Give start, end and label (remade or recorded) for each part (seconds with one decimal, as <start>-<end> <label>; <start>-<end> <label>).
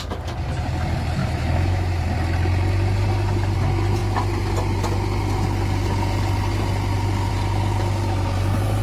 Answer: 0.0-1.2 recorded; 1.2-2.0 remade; 2.0-8.8 recorded